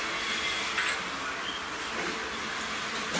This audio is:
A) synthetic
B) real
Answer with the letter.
B